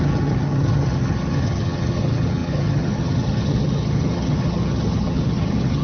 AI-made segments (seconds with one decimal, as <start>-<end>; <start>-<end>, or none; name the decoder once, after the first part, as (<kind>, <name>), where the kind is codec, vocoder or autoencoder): 0.0-5.8 (vocoder, HiFi-GAN)